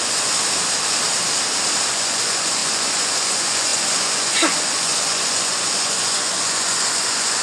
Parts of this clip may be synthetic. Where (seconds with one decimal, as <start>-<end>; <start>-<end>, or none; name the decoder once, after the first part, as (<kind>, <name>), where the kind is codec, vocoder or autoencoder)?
0.0-0.4 (vocoder, Vocos); 1.9-7.4